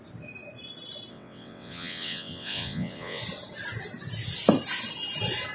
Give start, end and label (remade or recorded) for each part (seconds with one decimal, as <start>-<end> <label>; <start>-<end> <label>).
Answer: 0.0-1.1 recorded; 1.1-3.2 remade; 3.2-5.5 recorded